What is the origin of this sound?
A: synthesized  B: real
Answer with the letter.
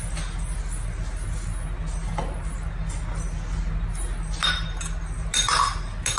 B